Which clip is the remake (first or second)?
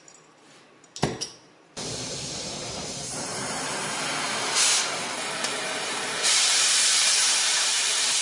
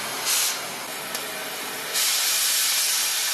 first